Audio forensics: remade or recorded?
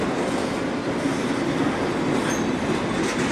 recorded